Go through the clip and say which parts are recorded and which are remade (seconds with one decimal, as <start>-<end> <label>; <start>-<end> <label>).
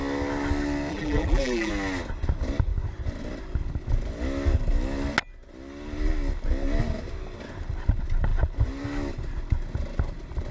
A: 0.0-0.9 recorded; 0.9-1.7 remade; 1.7-10.5 recorded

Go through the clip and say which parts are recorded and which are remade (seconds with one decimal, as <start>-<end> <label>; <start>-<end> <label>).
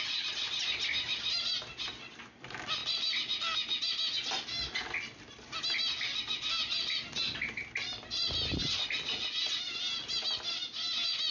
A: 0.0-11.3 recorded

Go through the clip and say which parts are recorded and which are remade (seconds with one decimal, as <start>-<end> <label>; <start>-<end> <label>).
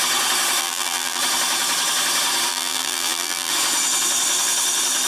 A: 0.0-0.6 recorded; 0.6-1.2 remade; 1.2-2.5 recorded; 2.5-3.5 remade; 3.5-5.1 recorded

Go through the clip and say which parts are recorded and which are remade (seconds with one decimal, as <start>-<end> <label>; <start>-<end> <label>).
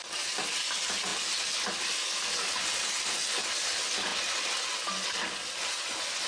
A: 0.0-6.3 recorded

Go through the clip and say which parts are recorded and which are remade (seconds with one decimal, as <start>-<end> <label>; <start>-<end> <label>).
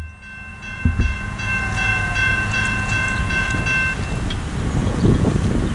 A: 0.0-0.5 recorded; 0.5-3.6 remade; 3.6-4.8 recorded; 4.8-5.3 remade; 5.3-5.7 recorded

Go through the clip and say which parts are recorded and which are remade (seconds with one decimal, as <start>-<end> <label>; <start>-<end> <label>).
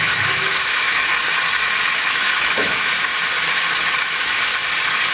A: 0.0-1.1 remade; 1.1-1.9 recorded; 1.9-3.1 remade; 3.1-4.0 recorded; 4.0-4.5 remade; 4.5-5.1 recorded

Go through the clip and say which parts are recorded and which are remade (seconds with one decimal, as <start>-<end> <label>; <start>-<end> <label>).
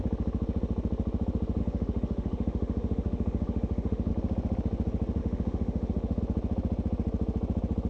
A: 0.0-1.6 recorded; 1.6-4.1 remade; 4.1-5.2 recorded; 5.2-6.2 remade; 6.2-7.9 recorded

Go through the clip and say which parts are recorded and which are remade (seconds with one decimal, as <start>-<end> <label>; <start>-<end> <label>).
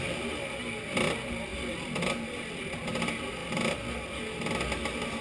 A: 0.0-5.2 recorded